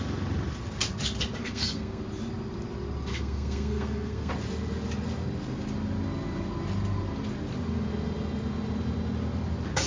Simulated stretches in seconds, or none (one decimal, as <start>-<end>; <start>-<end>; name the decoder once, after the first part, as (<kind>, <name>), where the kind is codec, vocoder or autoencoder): 1.4-2.0 (codec, SNAC); 3.1-4.3